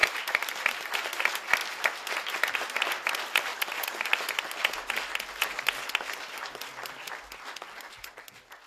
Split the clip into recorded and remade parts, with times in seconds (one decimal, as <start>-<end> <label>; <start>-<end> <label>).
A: 0.0-1.1 remade; 1.1-8.7 recorded